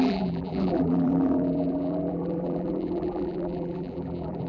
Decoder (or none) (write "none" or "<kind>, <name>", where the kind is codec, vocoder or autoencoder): vocoder, BigVGAN v2